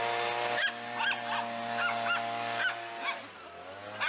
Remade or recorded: recorded